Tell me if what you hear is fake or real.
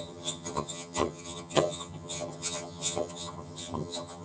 fake